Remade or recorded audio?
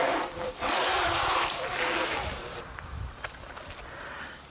recorded